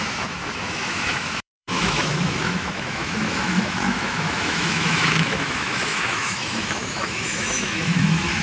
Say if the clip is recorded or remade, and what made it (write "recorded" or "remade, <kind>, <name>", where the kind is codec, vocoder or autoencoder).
remade, autoencoder, DAC-VAE